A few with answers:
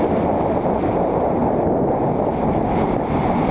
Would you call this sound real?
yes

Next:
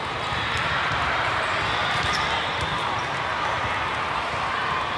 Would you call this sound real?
yes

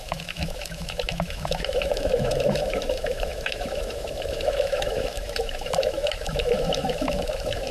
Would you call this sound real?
no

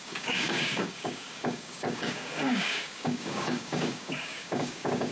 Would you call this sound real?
no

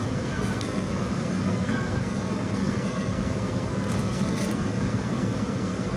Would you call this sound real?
no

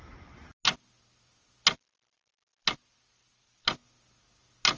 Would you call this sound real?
yes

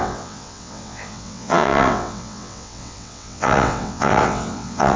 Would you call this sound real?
no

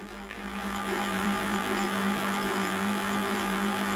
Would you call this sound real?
no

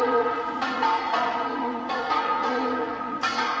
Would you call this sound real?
no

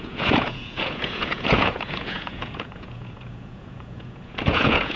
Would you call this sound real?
no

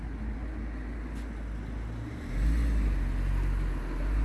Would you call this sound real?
yes